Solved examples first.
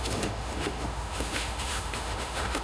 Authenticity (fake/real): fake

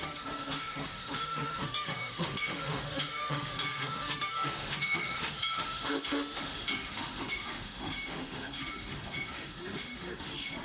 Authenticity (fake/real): fake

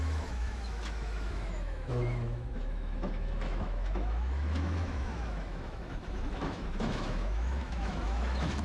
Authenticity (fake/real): fake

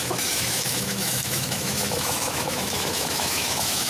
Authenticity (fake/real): fake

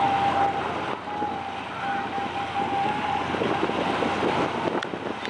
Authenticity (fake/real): real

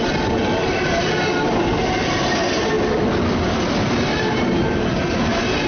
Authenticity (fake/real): real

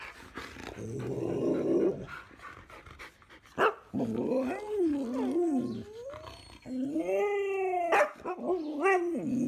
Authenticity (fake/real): real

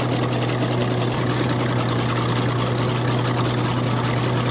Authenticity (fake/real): real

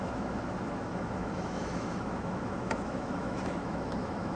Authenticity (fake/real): fake